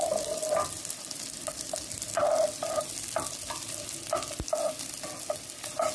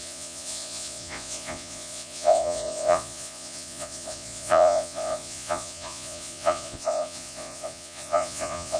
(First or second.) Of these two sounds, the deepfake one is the second